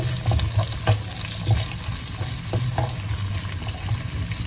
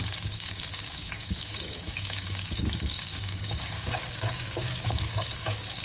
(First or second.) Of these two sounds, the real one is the first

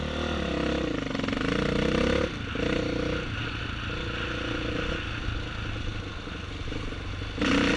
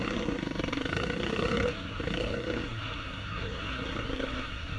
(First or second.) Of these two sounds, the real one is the first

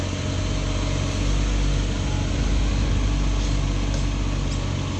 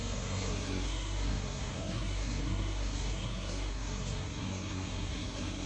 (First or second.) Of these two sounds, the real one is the first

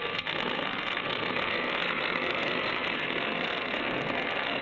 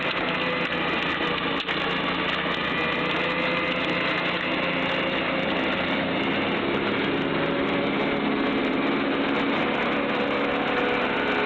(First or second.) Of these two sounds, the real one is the second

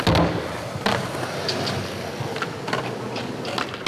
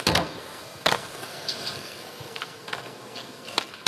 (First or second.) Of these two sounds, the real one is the first